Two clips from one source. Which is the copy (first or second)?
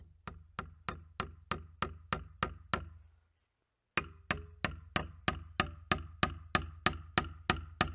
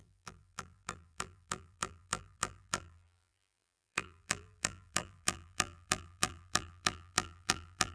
second